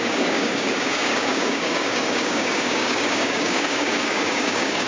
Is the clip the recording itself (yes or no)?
no